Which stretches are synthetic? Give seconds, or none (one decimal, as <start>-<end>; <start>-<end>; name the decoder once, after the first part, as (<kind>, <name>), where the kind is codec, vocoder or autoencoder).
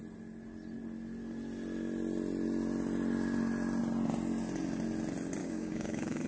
5.4-6.3 (codec, DAC)